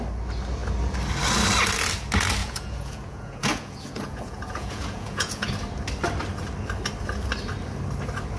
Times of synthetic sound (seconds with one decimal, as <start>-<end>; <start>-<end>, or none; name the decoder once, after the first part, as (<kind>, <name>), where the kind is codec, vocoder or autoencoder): 2.4-5.5 (vocoder, Vocos)